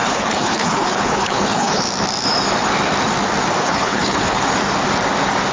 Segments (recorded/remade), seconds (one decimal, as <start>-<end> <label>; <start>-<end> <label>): 0.0-1.8 remade; 1.8-3.6 recorded; 3.6-4.4 remade; 4.4-5.5 recorded